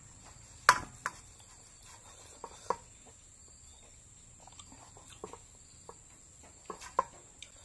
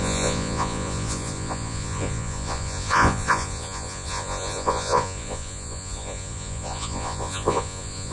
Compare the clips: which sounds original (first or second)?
first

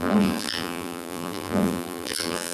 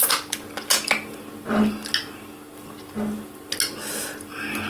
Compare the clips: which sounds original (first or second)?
second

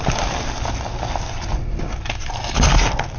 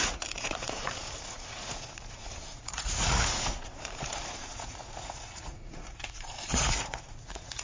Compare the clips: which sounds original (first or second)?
first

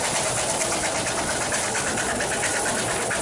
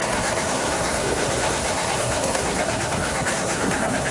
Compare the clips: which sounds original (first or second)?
first